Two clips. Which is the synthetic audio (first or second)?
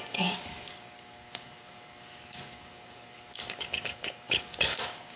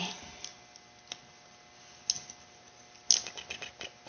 first